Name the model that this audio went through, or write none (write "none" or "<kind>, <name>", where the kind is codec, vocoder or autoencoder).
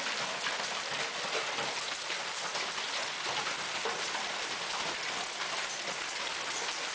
none